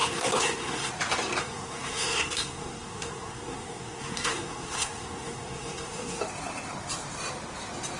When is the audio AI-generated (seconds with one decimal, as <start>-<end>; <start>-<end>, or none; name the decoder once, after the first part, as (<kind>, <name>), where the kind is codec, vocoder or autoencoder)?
0.0-0.9 (codec, SNAC); 1.4-6.2

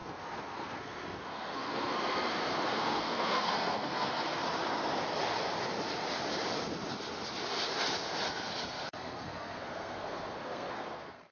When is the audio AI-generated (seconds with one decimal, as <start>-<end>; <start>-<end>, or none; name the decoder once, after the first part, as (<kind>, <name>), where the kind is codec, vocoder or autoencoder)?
0.0-4.4 (codec, SNAC); 8.9-11.3

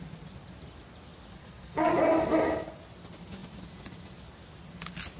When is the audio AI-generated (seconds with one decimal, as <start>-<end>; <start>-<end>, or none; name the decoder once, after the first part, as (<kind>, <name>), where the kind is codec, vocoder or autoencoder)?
1.4-1.9 (codec, SNAC)

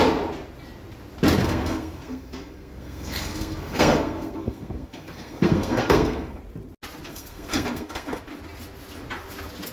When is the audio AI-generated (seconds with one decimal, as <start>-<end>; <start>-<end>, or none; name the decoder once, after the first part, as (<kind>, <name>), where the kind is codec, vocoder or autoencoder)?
1.4-6.4 (codec, SNAC); 7.1-8.2

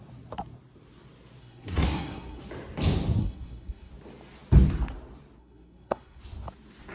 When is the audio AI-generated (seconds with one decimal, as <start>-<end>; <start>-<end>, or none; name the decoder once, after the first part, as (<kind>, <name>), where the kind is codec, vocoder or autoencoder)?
1.4-2.4 (codec, SNAC); 3.2-3.9; 5.4-6.2